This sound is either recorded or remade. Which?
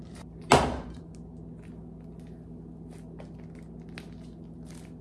recorded